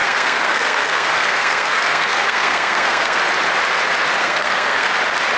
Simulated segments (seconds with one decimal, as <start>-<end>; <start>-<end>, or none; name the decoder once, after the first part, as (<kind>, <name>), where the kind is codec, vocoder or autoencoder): 0.0-3.2 (codec, SNAC); 4.2-4.9